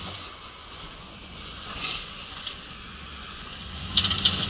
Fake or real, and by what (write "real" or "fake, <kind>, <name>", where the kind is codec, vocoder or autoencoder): fake, vocoder, Vocos